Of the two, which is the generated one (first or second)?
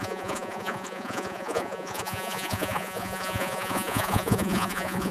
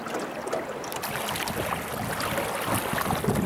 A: first